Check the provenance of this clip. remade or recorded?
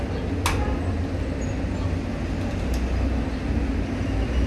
recorded